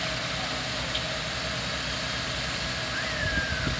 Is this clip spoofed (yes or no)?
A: no